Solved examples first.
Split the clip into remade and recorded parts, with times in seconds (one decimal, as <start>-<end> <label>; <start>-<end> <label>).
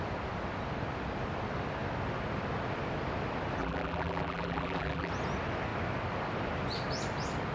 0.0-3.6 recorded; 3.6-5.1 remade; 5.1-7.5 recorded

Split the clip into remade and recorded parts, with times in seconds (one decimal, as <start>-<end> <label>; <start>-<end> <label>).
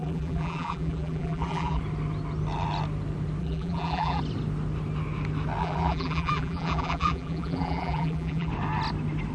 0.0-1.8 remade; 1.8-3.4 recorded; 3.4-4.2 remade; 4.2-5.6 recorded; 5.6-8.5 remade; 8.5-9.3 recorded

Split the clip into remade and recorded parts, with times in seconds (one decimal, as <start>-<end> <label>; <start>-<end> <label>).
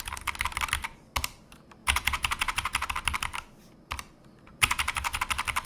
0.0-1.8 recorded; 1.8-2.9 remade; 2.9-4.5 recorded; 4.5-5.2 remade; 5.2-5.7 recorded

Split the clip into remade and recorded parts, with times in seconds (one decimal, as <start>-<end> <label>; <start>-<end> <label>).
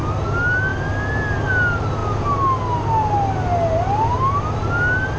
0.0-5.2 recorded